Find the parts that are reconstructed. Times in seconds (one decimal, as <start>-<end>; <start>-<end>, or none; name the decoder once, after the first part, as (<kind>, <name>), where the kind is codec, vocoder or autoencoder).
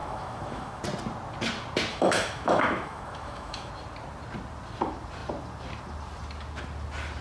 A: 0.0-0.8 (autoencoder, DAC-VAE); 1.9-3.7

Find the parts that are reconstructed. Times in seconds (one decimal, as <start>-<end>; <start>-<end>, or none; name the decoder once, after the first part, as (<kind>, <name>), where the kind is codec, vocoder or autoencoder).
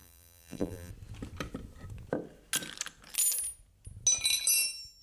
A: 0.0-0.9 (vocoder, BigVGAN v2)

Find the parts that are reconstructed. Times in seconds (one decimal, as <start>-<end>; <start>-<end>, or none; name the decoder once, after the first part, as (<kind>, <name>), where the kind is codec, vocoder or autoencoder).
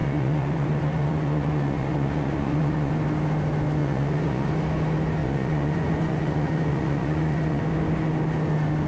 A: 0.0-2.9 (vocoder, Vocos); 3.8-4.5; 5.2-7.6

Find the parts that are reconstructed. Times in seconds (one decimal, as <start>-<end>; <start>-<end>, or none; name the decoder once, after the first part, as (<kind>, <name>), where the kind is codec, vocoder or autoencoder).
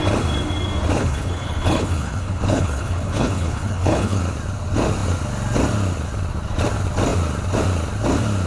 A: 1.0-4.2 (codec, HILCodec)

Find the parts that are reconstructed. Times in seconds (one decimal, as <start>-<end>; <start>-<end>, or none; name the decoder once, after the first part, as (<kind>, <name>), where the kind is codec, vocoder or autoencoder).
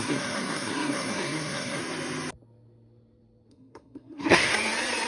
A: 0.0-1.8 (codec, SNAC); 3.5-4.5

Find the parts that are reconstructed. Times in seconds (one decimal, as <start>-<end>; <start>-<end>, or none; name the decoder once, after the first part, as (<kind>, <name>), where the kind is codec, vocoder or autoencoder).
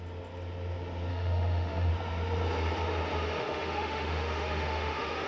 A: 1.1-1.9 (autoencoder, DAC-VAE); 3.4-5.3